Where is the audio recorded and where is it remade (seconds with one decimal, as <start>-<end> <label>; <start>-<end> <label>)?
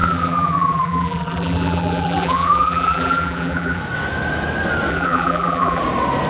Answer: 0.0-3.8 remade; 3.8-4.9 recorded; 4.9-5.8 remade; 5.8-6.3 recorded